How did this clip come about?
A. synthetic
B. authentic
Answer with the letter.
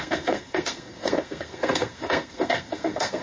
A